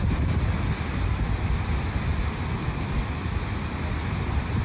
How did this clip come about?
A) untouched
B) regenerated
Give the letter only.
A